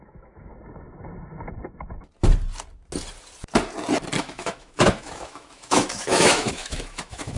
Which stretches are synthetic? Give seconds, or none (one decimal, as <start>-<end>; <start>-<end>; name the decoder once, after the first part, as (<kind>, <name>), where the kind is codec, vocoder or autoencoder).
0.0-0.5 (autoencoder, DAC-VAE); 4.2-7.4